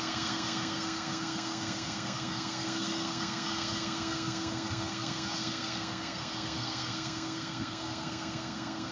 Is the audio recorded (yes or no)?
no